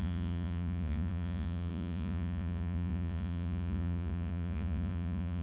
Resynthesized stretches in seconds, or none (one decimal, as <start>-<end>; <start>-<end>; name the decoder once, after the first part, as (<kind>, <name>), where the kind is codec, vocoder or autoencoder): 0.0-5.4 (vocoder, Vocos)